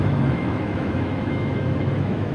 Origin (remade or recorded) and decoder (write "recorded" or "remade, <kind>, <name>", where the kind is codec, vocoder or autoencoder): remade, autoencoder, DAC-VAE